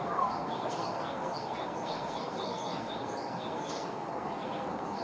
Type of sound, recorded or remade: remade